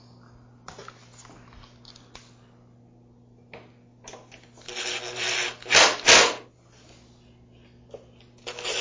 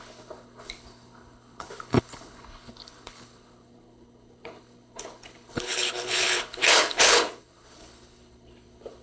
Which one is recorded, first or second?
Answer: first